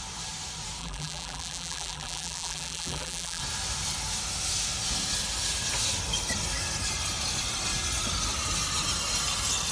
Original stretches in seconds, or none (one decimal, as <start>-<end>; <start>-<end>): 0.0-0.8; 3.4-9.7